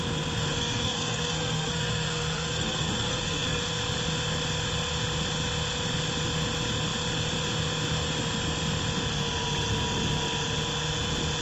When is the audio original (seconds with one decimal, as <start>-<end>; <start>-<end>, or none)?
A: 0.0-0.5; 3.6-11.4